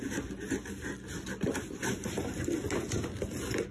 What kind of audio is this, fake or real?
real